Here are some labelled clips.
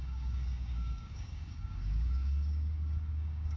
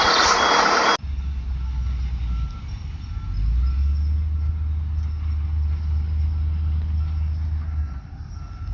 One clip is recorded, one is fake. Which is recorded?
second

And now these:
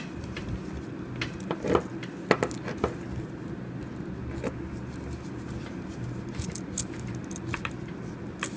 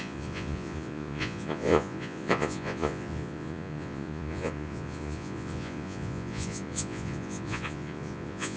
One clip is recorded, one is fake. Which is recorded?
first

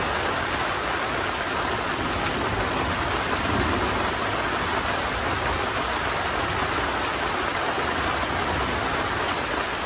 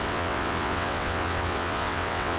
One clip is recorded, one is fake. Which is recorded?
first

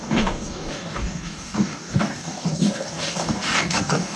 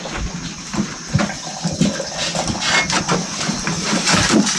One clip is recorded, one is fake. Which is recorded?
second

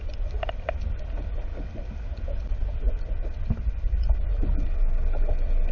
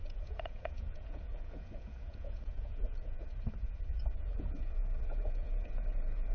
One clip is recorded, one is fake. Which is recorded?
first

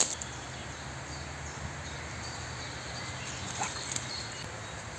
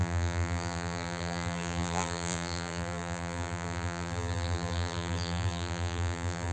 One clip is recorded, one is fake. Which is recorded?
first